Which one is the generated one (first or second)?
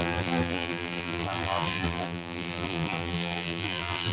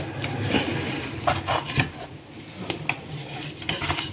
first